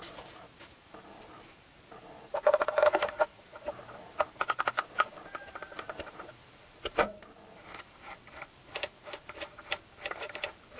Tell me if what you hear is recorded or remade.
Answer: remade